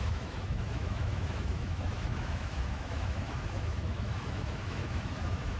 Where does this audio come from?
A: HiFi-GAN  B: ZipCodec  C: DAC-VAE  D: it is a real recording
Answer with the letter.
C